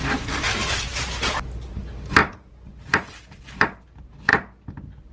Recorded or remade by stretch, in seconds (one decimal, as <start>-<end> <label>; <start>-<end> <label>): 0.0-0.5 remade; 0.5-0.9 recorded; 0.9-1.7 remade; 1.7-2.2 recorded; 2.2-3.0 remade; 3.0-5.1 recorded

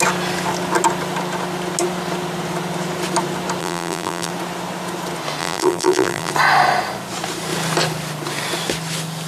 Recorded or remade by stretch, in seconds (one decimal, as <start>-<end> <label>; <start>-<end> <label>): 0.0-3.6 recorded; 3.6-4.3 remade; 4.3-5.4 recorded; 5.4-6.3 remade; 6.3-9.3 recorded

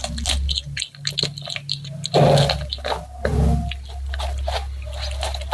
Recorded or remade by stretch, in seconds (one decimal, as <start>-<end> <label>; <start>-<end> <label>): 0.0-5.5 recorded

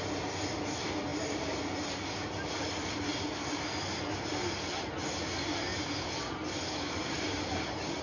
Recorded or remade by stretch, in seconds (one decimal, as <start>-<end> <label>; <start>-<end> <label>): 0.0-1.1 recorded; 1.1-1.6 remade; 1.6-5.7 recorded; 5.7-7.5 remade; 7.5-8.0 recorded

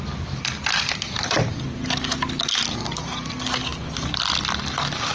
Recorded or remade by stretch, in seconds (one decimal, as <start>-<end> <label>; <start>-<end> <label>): 0.0-5.1 recorded

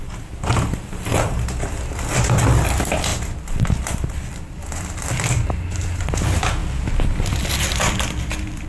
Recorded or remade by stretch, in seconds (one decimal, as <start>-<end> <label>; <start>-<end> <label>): 0.0-6.6 remade; 6.6-7.6 recorded; 7.6-8.7 remade

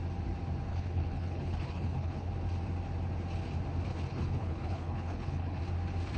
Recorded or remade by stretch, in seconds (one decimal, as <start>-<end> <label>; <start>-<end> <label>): 0.0-0.7 recorded; 0.7-2.3 remade; 2.3-3.9 recorded; 3.9-5.6 remade; 5.6-6.2 recorded

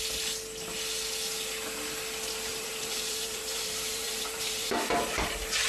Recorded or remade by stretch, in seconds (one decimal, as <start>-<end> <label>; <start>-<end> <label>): 0.0-2.5 recorded; 2.5-4.8 remade; 4.8-5.7 recorded